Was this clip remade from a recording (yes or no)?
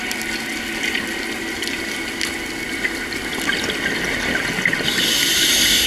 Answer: no